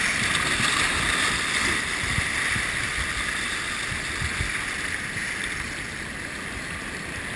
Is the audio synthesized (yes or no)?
no